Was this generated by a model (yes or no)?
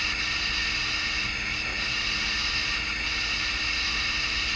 no